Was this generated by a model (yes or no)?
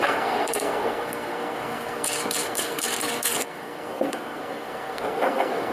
yes